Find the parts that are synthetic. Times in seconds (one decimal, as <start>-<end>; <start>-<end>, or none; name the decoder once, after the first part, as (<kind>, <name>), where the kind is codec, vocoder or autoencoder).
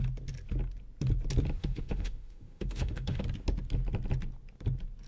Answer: 1.6-3.2 (autoencoder, DAC-VAE)